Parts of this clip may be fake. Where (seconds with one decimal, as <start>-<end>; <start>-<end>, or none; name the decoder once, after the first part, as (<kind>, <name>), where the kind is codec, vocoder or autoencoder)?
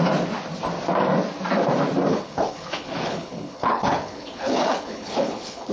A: 2.1-5.7 (codec, HILCodec)